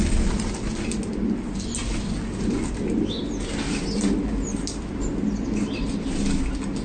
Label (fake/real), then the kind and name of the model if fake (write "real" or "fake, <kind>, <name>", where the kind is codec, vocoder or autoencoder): real